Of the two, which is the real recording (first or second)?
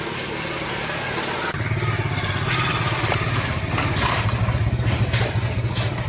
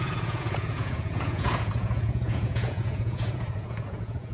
first